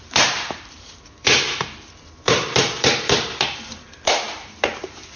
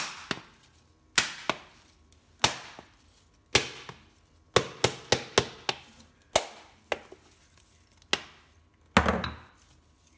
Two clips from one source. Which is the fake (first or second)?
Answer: first